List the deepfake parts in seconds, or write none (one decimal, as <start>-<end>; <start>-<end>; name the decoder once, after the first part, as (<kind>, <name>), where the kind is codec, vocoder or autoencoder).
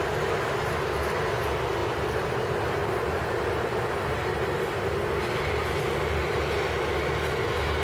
1.8-2.4 (vocoder, BigVGAN v2); 2.8-3.5